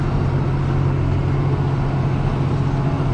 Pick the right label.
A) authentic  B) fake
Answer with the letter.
A